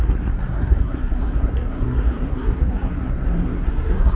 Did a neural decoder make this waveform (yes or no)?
yes